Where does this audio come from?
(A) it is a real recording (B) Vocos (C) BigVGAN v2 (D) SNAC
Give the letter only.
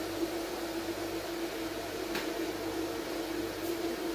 C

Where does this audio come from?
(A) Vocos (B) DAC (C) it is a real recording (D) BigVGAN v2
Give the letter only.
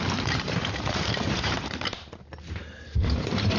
D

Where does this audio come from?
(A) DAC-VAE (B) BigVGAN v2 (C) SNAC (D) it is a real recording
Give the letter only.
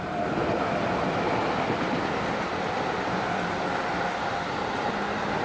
B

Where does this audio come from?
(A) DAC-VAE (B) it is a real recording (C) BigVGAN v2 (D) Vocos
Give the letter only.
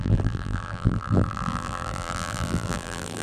C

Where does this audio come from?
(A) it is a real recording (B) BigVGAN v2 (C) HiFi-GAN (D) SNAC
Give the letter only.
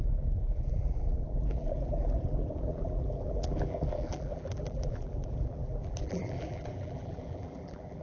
B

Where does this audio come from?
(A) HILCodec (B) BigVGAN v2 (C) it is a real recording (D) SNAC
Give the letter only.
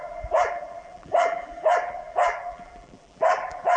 B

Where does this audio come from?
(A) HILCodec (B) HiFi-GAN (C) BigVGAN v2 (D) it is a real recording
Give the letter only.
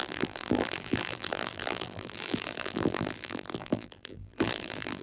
C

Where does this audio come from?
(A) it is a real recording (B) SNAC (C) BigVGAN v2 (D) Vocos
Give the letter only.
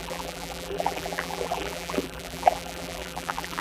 C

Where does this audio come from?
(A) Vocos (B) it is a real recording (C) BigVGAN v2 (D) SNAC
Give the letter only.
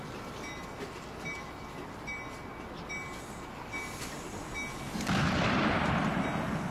B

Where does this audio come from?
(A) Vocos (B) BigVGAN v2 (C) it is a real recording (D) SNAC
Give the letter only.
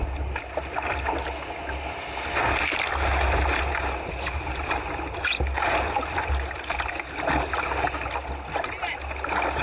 C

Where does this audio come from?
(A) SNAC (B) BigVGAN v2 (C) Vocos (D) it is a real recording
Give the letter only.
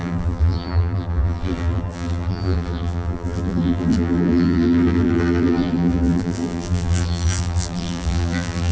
B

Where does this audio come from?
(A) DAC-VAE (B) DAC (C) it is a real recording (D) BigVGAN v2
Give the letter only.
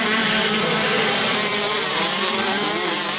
D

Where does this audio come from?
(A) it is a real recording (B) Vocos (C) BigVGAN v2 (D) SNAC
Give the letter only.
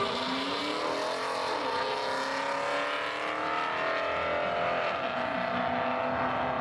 A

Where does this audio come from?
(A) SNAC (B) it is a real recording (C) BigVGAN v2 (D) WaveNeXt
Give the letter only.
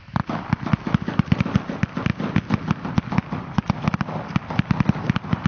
B